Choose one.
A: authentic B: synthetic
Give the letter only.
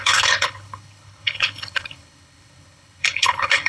B